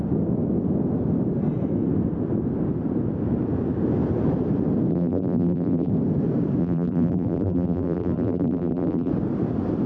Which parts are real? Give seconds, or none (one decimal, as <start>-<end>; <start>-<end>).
0.0-4.9; 5.9-6.6; 9.1-9.9